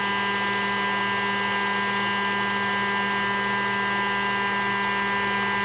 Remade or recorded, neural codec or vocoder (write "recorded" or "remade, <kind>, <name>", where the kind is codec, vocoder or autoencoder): recorded